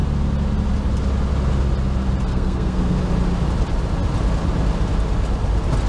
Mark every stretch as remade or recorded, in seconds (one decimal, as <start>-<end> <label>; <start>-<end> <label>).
0.0-2.3 recorded; 2.3-3.0 remade; 3.0-5.9 recorded